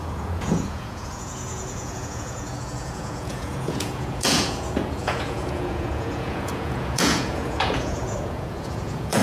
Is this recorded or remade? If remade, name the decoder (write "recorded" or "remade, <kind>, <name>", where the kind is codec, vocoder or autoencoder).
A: remade, vocoder, Vocos